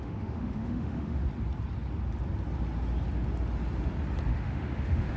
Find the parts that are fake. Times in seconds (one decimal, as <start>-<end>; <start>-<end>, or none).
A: 0.0-1.2; 4.3-5.2